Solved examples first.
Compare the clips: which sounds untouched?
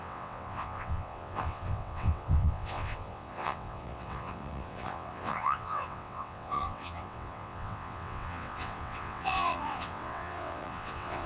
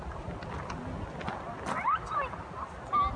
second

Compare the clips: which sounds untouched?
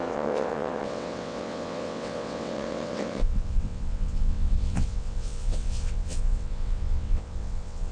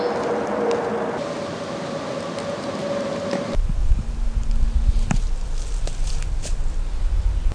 second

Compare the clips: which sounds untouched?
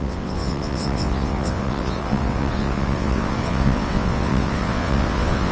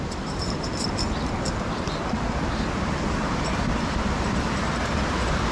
second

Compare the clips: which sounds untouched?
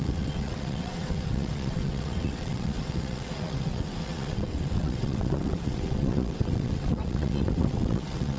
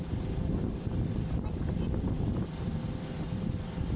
second